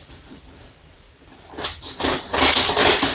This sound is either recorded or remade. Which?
remade